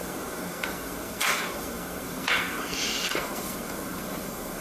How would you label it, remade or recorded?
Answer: remade